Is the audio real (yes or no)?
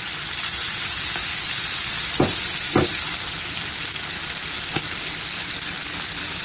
yes